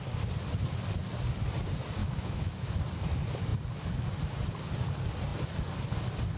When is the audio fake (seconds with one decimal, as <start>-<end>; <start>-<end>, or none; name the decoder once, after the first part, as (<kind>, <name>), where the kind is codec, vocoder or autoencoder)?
2.0-2.8 (autoencoder, DAC-VAE)